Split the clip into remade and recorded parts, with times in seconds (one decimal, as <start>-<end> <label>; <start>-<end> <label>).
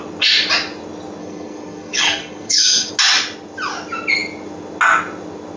0.0-1.2 recorded; 1.2-2.9 remade; 2.9-5.6 recorded